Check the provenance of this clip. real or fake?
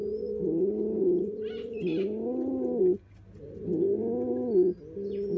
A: real